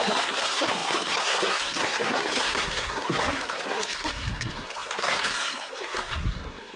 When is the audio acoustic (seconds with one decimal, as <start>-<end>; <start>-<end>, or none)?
none

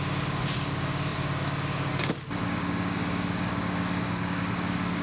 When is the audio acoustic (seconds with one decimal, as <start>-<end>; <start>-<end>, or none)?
none

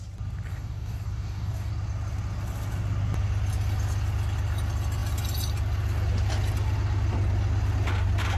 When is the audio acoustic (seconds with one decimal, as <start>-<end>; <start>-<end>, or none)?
0.0-0.5; 1.7-8.4